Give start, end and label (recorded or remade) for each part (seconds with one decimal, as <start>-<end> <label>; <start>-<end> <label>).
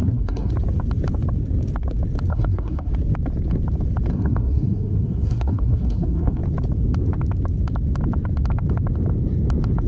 0.0-0.5 remade; 0.5-2.3 recorded; 2.3-2.9 remade; 2.9-4.1 recorded; 4.1-6.4 remade; 6.4-9.9 recorded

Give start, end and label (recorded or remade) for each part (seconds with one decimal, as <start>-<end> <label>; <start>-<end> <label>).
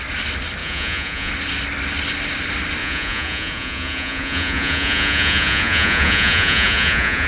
0.0-0.6 recorded; 0.6-1.3 remade; 1.3-2.8 recorded; 2.8-7.3 remade